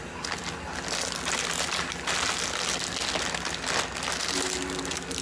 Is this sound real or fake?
real